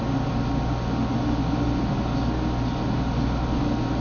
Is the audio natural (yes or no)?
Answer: yes